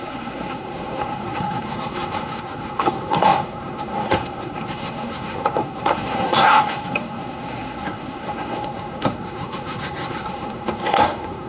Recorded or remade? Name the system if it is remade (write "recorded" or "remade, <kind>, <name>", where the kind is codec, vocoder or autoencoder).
remade, codec, SNAC